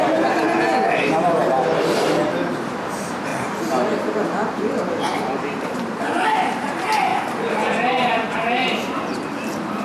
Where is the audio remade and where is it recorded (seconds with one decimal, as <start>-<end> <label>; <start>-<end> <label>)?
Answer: 0.0-0.4 remade; 0.4-1.1 recorded; 1.1-9.8 remade